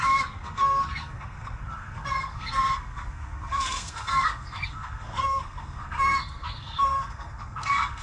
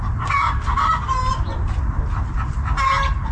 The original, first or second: second